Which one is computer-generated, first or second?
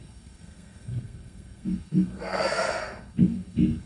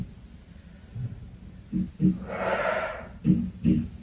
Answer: first